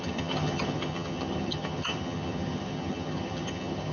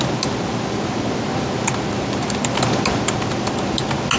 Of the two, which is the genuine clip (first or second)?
second